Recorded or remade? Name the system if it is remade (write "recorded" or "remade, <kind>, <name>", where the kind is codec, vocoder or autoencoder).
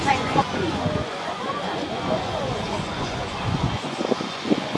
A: remade, vocoder, Vocos